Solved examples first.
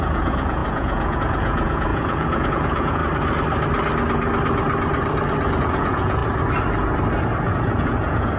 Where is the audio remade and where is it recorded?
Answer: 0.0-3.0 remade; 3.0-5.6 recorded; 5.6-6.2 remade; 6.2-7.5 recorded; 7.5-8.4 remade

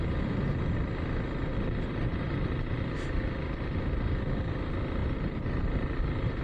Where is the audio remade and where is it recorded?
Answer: 0.0-1.9 recorded; 1.9-2.8 remade; 2.8-5.0 recorded; 5.0-6.4 remade

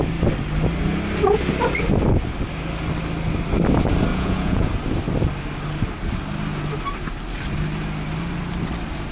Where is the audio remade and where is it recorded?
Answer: 0.0-4.1 recorded; 4.1-4.7 remade; 4.7-9.1 recorded

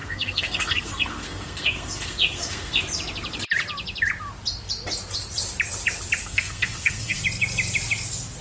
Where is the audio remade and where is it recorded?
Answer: 0.0-2.8 remade; 2.8-6.2 recorded; 6.2-7.2 remade; 7.2-8.4 recorded

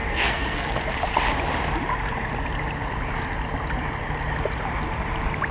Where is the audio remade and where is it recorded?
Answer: 0.0-0.7 remade; 0.7-5.5 recorded